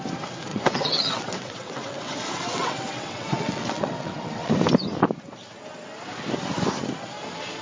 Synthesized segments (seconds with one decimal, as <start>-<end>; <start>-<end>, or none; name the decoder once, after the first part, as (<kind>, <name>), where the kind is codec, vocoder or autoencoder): 0.5-4.5 (vocoder, WaveNeXt)